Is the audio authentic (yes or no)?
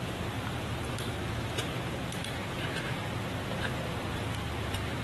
no